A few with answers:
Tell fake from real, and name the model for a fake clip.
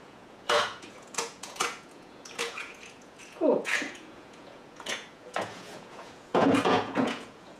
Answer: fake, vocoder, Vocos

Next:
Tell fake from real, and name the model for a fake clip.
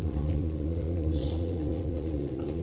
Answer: fake, vocoder, Vocos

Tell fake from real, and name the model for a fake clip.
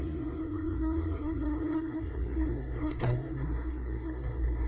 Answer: fake, codec, SNAC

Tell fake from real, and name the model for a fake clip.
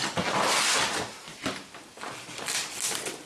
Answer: real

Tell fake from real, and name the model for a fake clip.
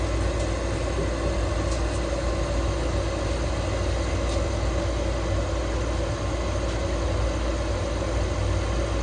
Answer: real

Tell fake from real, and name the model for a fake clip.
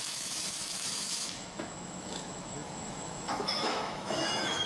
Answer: fake, autoencoder, DAC-VAE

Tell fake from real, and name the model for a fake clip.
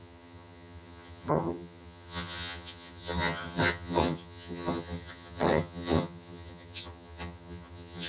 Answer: fake, vocoder, HiFi-GAN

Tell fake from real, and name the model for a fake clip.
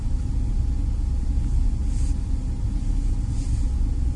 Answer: real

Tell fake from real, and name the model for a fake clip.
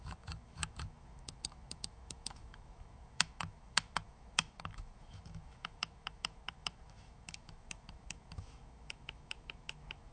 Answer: fake, autoencoder, DAC-VAE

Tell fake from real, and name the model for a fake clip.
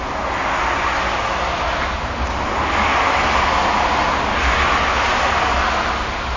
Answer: real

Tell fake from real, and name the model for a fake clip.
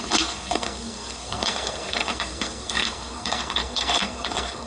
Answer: fake, codec, SNAC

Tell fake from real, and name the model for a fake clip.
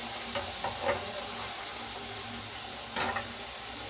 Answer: real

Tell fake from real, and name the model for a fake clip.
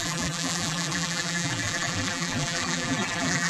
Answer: fake, vocoder, BigVGAN v2